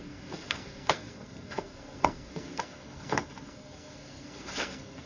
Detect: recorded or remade remade